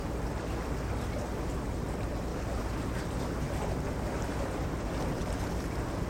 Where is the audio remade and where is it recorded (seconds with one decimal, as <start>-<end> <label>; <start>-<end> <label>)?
0.0-6.1 recorded